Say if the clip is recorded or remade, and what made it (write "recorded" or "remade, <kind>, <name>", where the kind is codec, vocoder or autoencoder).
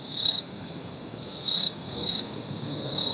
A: remade, codec, SNAC